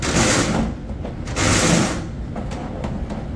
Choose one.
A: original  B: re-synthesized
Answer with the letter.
A